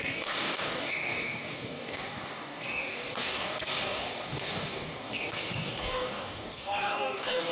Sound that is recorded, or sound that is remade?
remade